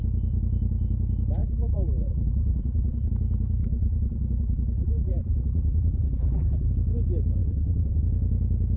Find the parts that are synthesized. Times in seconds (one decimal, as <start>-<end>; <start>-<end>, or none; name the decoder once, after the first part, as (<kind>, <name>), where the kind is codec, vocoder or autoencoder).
1.4-3.1 (vocoder, BigVGAN v2); 3.6-6.7; 7.4-8.0